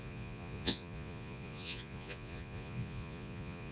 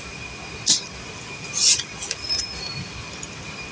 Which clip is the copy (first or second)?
first